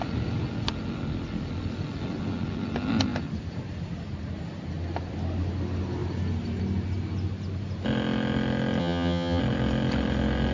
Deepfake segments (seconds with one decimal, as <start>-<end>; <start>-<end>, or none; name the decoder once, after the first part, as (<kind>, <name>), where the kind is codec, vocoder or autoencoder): 8.8-9.4 (vocoder, HiFi-GAN)